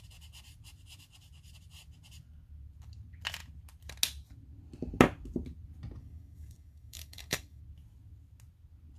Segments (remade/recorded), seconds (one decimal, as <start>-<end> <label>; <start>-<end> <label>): 0.0-6.0 recorded; 6.0-7.6 remade; 7.6-9.0 recorded